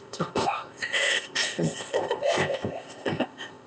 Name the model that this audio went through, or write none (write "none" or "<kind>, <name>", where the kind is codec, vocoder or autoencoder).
codec, ZipCodec